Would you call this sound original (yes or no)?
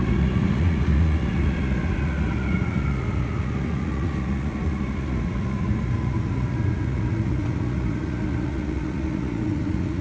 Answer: no